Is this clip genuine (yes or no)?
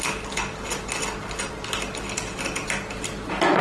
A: yes